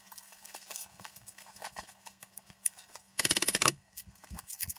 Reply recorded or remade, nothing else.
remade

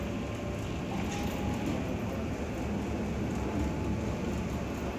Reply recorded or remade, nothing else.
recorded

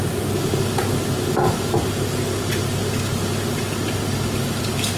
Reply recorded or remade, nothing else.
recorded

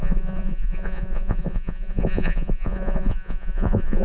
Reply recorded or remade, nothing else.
remade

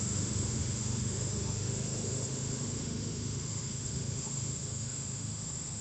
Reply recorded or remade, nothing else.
remade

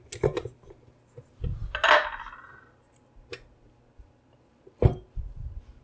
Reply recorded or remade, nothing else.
recorded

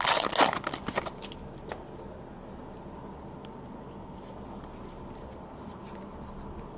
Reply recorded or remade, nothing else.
recorded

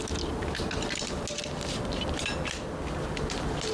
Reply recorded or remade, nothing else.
recorded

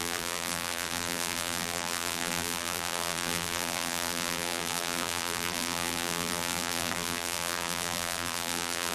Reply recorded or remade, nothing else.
remade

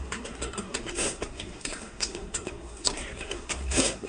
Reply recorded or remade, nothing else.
remade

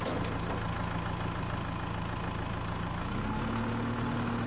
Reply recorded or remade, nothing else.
recorded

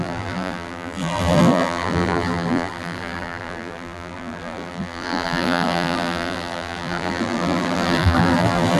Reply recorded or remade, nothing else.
remade